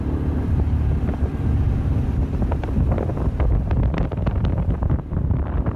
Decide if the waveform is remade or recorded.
remade